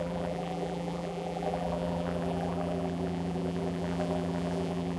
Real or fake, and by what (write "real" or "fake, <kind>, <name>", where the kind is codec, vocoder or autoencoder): fake, vocoder, BigVGAN v2